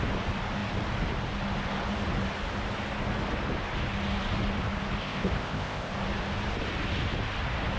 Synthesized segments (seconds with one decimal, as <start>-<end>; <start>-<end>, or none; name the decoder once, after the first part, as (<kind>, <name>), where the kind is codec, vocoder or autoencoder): 5.0-5.9 (codec, ZipCodec)